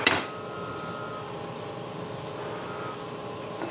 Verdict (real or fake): real